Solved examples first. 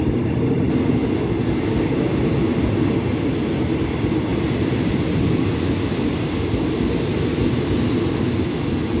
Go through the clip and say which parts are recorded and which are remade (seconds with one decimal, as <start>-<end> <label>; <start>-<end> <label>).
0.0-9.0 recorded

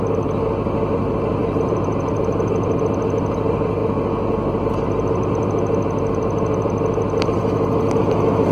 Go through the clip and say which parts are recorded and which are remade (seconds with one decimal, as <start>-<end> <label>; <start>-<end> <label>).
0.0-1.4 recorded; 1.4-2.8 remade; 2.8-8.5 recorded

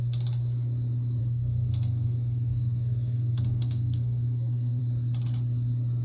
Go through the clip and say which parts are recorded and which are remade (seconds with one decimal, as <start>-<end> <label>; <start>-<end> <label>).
0.0-1.2 recorded; 1.2-4.8 remade; 4.8-6.0 recorded

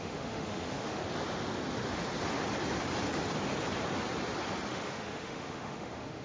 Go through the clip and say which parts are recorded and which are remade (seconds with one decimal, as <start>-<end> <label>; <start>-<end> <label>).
0.0-1.0 remade; 1.0-4.7 recorded; 4.7-6.2 remade

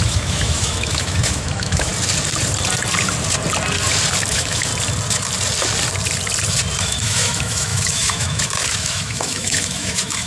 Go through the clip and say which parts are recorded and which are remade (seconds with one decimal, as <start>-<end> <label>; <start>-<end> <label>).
0.0-1.9 remade; 1.9-4.3 recorded; 4.3-4.7 remade; 4.7-6.8 recorded; 6.8-10.3 remade